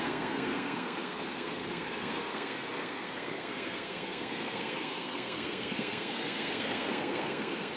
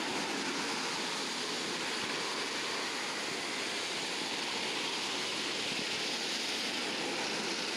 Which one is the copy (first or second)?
first